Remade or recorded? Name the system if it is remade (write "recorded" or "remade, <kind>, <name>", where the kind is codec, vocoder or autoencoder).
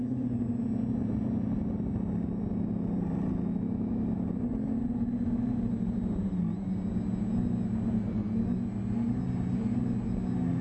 recorded